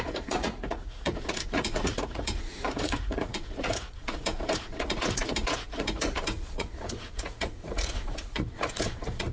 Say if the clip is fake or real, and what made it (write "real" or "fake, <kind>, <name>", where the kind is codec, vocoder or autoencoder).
fake, vocoder, Vocos